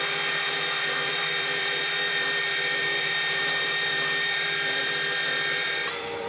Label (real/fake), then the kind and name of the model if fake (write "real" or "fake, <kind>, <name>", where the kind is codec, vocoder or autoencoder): fake, vocoder, BigVGAN v2